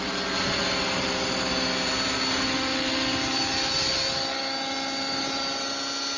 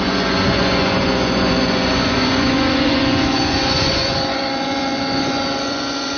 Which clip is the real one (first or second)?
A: first